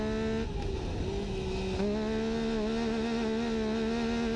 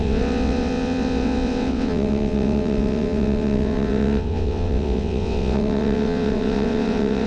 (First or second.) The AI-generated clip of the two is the second